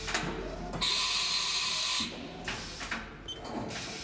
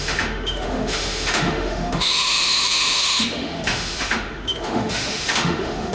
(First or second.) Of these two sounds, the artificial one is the second